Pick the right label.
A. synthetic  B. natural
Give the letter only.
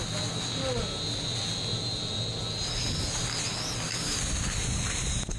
B